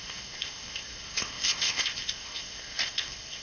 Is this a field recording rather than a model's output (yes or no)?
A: no